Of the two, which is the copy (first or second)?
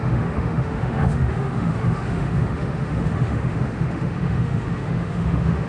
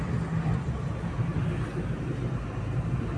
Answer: first